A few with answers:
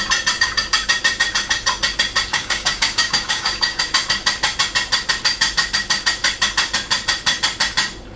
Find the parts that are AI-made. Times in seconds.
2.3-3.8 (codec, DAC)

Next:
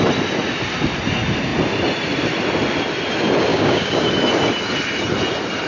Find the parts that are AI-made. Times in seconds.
3.5-4.1 (codec, DAC)

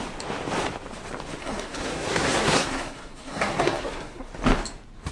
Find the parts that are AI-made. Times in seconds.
1.4-4.3 (codec, SNAC)